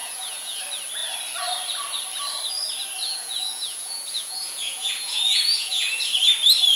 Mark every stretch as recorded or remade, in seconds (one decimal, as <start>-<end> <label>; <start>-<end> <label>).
0.0-0.6 remade; 0.6-3.1 recorded; 3.1-6.0 remade; 6.0-6.8 recorded